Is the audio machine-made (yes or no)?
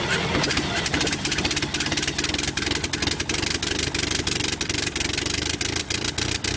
no